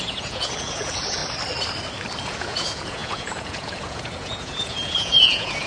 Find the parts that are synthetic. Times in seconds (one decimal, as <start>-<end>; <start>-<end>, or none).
0.0-1.2; 2.2-5.7